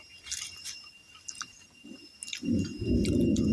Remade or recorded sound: recorded